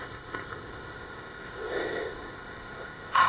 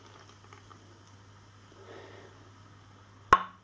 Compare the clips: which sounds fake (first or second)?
first